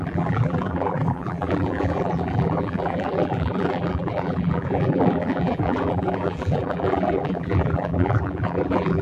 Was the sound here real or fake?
fake